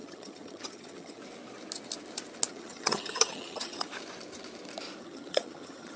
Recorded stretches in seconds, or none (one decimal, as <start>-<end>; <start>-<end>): 1.2-2.5; 3.9-5.0